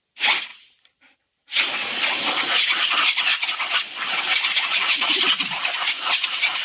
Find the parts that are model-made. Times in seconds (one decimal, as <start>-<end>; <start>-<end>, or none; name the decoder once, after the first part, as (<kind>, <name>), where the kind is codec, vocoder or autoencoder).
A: 0.5-1.7 (vocoder, BigVGAN v2)

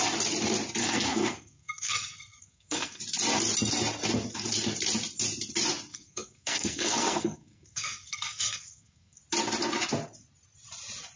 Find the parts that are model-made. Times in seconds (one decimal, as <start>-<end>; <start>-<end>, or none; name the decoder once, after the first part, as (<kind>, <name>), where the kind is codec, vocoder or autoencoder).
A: 0.8-3.0 (codec, SNAC); 5.9-9.2

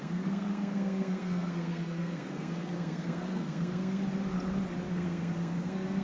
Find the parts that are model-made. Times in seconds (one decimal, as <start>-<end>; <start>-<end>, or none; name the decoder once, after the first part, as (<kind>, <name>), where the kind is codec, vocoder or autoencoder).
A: 0.0-4.0 (codec, SNAC); 4.9-6.0